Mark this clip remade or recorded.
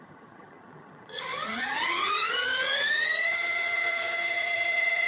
remade